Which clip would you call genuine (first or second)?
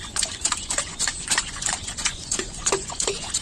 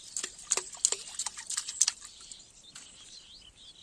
second